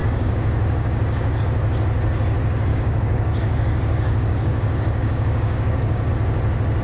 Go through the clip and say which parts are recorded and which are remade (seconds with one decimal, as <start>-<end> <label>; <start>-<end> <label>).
0.0-1.4 remade; 1.4-2.7 recorded; 2.7-6.1 remade; 6.1-6.8 recorded